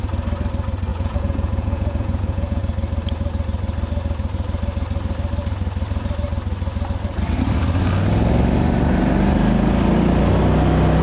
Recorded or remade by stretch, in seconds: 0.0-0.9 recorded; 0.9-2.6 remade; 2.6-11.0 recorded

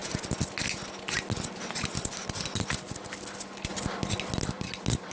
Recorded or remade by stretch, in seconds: 0.0-5.1 recorded

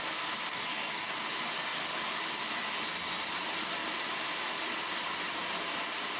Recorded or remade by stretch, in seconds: 0.0-0.5 recorded; 0.5-1.1 remade; 1.1-6.2 recorded

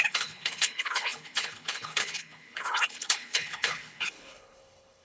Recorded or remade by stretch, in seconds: 0.0-5.0 remade

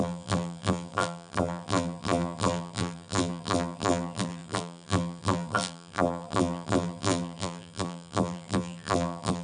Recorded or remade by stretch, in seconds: 0.0-9.4 remade